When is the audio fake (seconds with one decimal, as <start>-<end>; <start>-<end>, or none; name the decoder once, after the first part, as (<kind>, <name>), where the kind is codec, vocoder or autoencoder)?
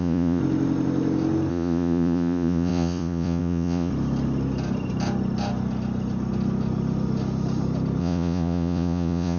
0.0-0.4 (vocoder, Vocos); 1.5-3.9; 8.0-9.4